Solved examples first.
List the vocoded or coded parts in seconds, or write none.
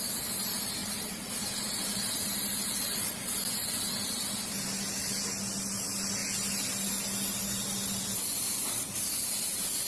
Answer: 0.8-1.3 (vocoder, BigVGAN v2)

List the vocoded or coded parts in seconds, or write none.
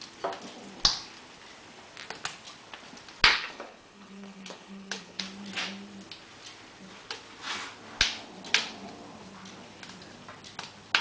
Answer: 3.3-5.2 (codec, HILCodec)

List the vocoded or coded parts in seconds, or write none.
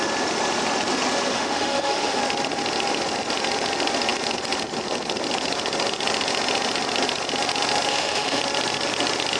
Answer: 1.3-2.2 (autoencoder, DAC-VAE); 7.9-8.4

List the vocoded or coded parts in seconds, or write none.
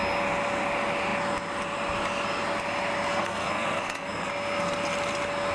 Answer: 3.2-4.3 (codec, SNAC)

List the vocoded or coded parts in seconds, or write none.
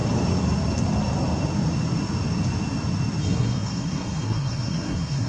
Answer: 3.2-5.3 (codec, SNAC)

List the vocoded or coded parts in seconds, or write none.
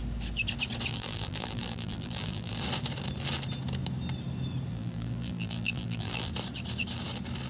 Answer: 0.9-2.6 (vocoder, BigVGAN v2); 4.7-6.3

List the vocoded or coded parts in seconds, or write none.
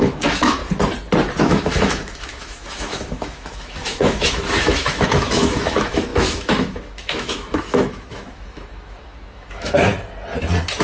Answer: 0.0-0.6 (autoencoder, DAC-VAE); 1.4-9.9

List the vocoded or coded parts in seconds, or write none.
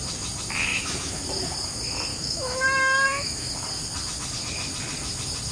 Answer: 0.7-1.2 (autoencoder, DAC-VAE); 2.1-3.5